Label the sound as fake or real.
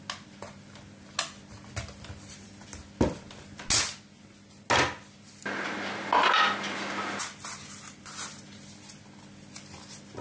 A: real